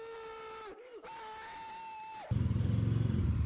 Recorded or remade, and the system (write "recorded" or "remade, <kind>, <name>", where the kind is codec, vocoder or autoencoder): recorded